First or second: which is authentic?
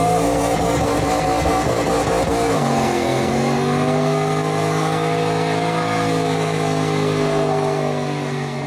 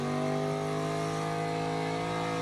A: second